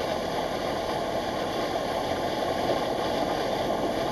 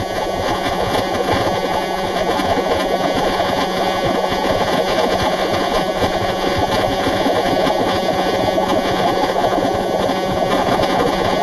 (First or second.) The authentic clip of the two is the first